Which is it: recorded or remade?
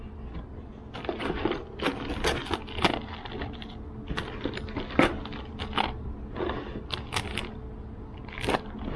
recorded